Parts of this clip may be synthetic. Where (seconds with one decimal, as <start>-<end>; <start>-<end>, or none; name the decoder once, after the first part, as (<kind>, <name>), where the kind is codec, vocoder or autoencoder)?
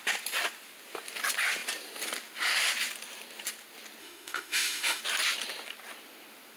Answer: 4.0-5.0 (autoencoder, DAC-VAE)